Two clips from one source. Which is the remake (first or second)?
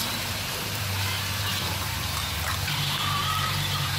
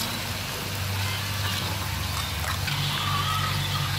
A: first